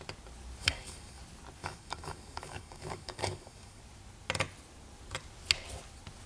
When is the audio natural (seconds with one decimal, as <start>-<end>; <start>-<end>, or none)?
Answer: 0.0-0.6; 1.2-1.6; 3.8-6.3